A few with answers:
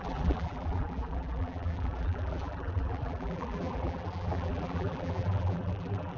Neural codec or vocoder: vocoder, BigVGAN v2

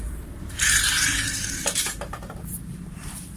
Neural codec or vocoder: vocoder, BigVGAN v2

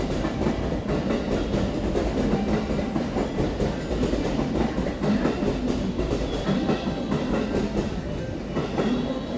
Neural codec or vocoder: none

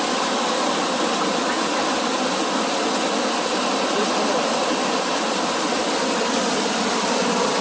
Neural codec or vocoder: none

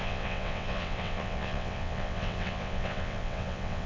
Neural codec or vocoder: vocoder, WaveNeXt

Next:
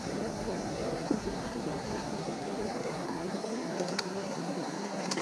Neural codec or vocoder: codec, SNAC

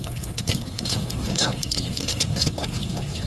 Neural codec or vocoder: codec, SNAC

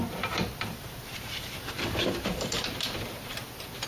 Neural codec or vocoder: vocoder, BigVGAN v2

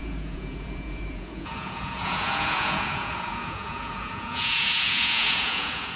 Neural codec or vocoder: vocoder, Vocos